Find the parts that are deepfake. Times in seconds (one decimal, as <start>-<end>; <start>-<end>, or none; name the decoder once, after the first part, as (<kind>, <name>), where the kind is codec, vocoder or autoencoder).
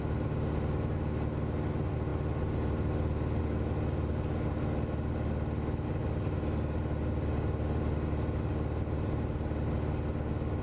none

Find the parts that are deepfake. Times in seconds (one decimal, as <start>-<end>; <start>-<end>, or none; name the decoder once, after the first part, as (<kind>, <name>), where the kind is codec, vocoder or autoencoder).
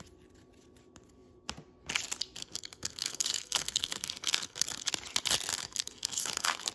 2.4-4.9 (codec, SNAC); 5.5-6.7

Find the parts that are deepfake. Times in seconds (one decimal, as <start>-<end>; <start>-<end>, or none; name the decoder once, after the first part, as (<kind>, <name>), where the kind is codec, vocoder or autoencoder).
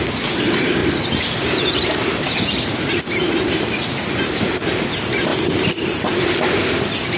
0.8-1.9 (vocoder, BigVGAN v2); 5.3-6.2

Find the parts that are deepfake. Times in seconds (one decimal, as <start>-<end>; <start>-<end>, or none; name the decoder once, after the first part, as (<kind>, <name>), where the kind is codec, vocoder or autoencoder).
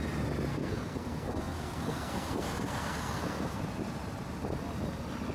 0.5-3.6 (codec, SNAC)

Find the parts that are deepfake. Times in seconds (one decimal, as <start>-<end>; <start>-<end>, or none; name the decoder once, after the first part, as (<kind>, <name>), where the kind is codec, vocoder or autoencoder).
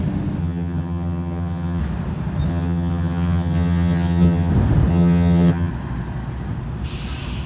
0.4-1.8 (vocoder, HiFi-GAN); 2.5-4.5; 4.9-5.7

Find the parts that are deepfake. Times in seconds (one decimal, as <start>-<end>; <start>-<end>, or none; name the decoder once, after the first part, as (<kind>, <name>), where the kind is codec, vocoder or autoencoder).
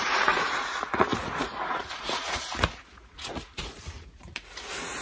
0.0-5.0 (vocoder, Vocos)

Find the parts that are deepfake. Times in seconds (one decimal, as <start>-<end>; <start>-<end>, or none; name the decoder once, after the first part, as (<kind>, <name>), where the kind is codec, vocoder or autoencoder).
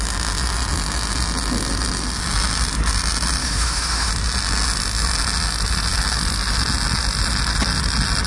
3.4-4.1 (autoencoder, DAC-VAE)